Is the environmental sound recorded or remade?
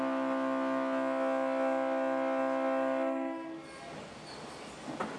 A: recorded